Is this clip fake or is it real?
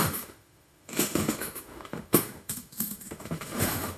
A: fake